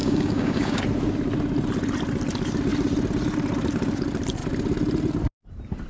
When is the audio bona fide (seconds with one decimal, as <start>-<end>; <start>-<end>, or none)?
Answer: 0.8-5.9